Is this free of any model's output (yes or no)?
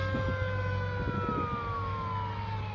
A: yes